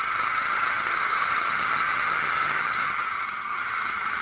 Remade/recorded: remade